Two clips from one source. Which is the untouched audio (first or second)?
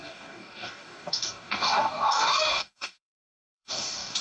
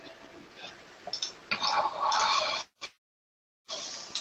second